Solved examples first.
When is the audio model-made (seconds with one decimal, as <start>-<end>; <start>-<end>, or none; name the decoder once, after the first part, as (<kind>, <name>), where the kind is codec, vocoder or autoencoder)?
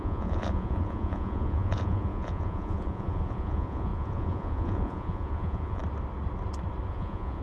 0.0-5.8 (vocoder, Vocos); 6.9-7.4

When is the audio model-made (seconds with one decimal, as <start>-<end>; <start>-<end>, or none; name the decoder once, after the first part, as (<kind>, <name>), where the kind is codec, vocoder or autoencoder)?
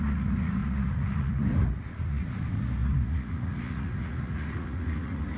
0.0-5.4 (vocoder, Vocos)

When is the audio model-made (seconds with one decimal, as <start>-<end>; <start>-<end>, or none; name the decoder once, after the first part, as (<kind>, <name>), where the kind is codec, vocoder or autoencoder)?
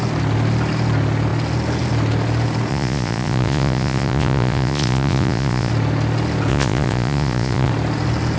2.7-5.7 (vocoder, Vocos); 6.5-7.7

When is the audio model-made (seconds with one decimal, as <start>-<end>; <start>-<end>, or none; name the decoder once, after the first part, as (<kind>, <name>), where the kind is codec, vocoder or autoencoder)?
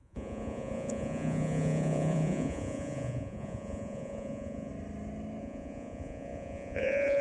0.0-4.7 (vocoder, Vocos); 5.4-7.2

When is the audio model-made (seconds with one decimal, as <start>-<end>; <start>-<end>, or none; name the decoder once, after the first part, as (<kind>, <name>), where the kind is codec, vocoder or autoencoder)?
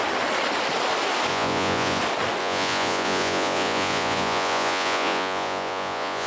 1.3-2.0 (vocoder, Vocos); 2.4-6.3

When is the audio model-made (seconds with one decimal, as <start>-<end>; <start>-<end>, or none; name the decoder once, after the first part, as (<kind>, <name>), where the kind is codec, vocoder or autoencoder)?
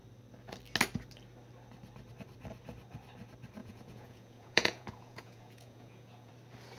3.6-6.3 (vocoder, Vocos)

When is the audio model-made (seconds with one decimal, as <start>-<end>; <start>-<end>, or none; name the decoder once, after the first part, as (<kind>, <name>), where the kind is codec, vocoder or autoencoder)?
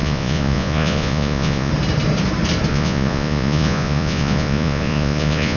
0.0-1.7 (vocoder, Vocos); 2.7-5.6